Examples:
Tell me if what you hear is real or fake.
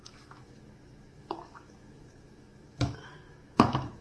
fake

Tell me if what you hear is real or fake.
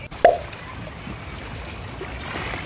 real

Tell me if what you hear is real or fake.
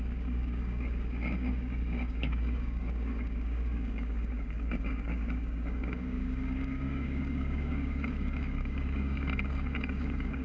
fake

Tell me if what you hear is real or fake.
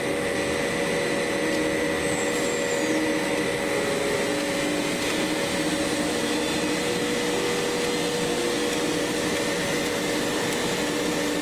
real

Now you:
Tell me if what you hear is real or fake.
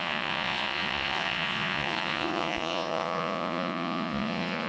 fake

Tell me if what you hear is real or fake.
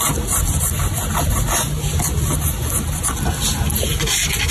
real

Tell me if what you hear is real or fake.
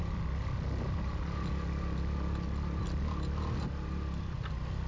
real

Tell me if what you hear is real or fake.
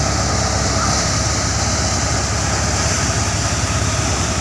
real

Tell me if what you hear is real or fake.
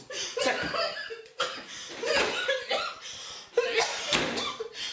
real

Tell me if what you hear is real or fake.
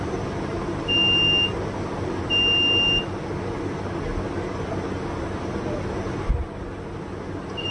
real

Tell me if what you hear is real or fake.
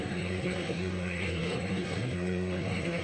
fake